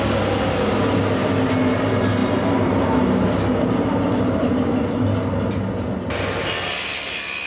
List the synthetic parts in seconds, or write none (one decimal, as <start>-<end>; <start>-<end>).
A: none